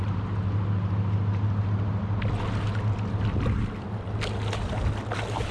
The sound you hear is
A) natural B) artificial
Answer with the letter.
A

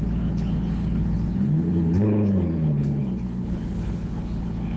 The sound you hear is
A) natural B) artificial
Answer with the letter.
B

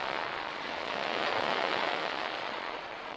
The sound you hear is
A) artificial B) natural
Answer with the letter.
A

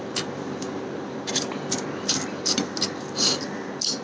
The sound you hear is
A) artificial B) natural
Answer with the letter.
B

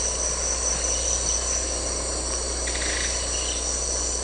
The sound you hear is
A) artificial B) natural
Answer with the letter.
B